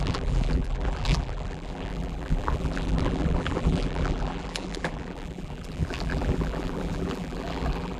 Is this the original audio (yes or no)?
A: no